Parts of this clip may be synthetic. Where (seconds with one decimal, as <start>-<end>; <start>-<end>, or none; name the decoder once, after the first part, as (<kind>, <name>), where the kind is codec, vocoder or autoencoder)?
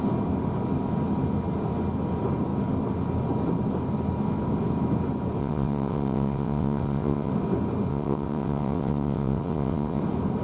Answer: 5.4-7.3 (vocoder, WaveNeXt); 7.9-10.0